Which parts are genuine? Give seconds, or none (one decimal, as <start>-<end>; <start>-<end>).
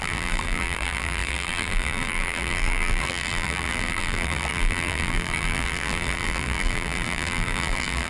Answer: none